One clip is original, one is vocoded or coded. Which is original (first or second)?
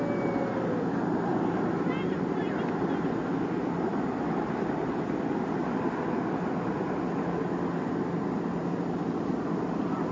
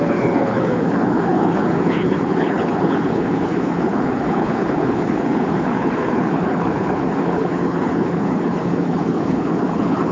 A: first